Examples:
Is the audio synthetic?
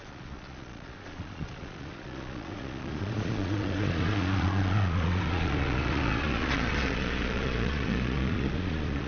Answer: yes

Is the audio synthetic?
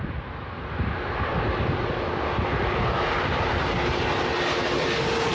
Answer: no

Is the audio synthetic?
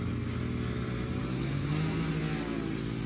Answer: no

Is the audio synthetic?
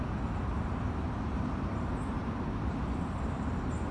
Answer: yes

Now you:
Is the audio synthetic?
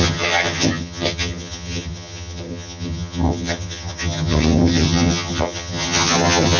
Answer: yes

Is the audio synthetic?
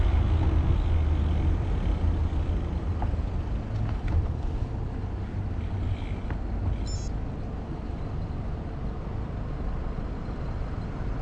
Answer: no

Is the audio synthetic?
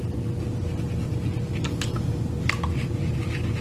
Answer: no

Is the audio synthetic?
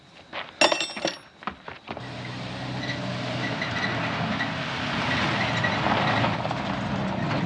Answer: no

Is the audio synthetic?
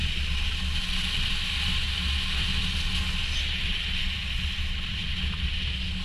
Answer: no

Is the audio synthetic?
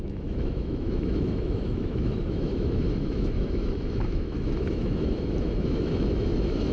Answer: yes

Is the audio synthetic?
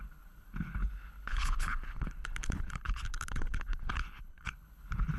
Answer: yes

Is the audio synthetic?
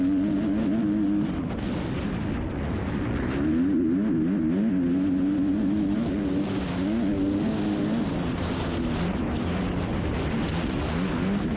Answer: no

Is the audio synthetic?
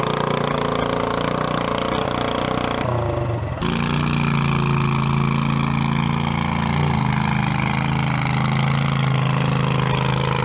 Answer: no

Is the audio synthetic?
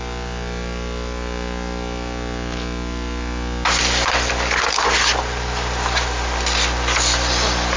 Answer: no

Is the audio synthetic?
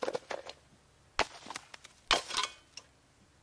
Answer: no